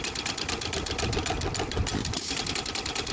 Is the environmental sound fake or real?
real